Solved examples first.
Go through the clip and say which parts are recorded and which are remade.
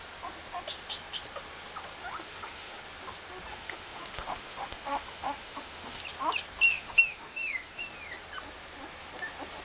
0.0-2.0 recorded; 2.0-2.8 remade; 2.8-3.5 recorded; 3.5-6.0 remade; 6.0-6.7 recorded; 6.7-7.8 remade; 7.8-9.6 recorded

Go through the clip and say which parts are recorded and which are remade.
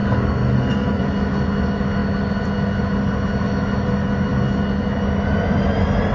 0.0-1.0 remade; 1.0-6.1 recorded